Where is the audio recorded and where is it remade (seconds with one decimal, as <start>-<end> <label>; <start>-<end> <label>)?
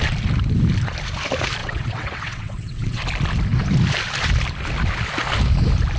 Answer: 0.0-1.6 recorded; 1.6-3.0 remade; 3.0-6.0 recorded